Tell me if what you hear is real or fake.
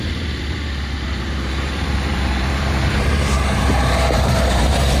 fake